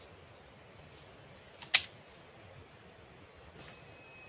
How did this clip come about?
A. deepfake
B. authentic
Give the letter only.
B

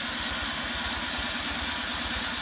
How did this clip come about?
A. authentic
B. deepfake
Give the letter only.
A